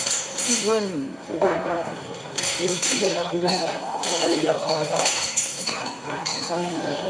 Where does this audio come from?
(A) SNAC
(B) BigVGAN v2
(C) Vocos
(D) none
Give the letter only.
A